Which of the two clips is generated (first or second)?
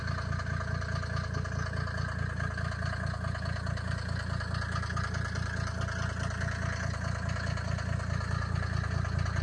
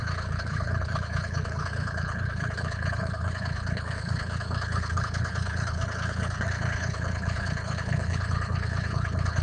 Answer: second